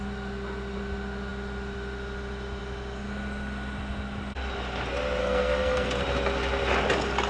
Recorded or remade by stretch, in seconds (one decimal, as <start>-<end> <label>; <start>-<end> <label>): 0.0-5.2 recorded; 5.2-6.0 remade; 6.0-7.3 recorded